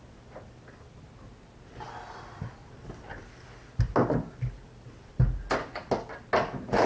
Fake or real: real